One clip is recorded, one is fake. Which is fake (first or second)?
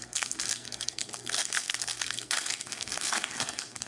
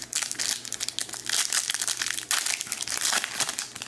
first